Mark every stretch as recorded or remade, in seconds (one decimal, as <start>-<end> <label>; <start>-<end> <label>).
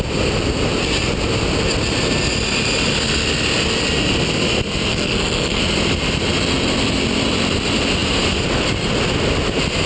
0.0-4.9 recorded; 4.9-5.6 remade; 5.6-9.9 recorded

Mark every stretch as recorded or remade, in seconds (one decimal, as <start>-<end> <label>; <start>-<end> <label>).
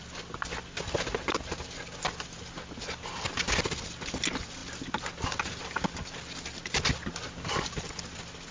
0.0-8.5 recorded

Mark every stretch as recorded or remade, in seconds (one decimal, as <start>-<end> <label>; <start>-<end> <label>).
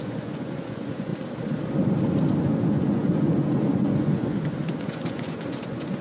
0.0-1.1 remade; 1.1-2.4 recorded; 2.4-6.0 remade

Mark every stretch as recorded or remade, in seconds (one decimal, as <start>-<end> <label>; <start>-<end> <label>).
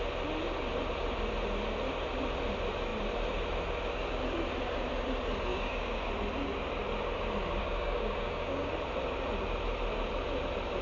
0.0-5.5 recorded; 5.5-6.1 remade; 6.1-7.6 recorded; 7.6-8.7 remade; 8.7-10.8 recorded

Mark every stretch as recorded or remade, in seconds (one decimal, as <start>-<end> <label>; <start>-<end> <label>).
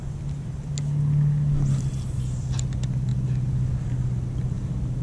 0.0-0.7 remade; 0.7-5.0 recorded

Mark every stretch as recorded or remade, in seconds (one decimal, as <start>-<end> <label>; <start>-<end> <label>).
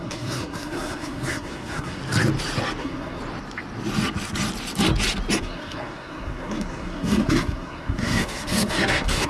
0.0-2.0 remade; 2.0-2.8 recorded; 2.8-3.2 remade; 3.2-5.4 recorded; 5.4-9.3 remade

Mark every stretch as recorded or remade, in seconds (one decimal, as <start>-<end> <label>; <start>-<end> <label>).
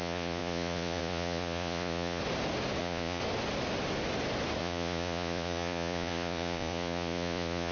0.0-2.2 remade; 2.2-2.8 recorded; 2.8-3.2 remade; 3.2-4.6 recorded; 4.6-7.7 remade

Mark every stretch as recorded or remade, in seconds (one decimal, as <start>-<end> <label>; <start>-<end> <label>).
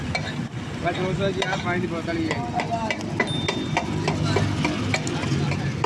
0.0-5.9 recorded